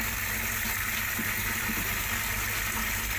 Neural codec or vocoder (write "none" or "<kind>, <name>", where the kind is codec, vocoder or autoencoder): none